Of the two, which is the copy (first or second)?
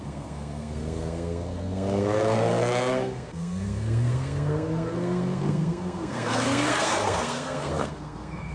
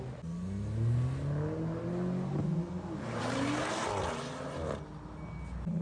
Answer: first